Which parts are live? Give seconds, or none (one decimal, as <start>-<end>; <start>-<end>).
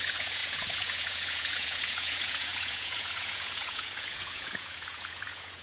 none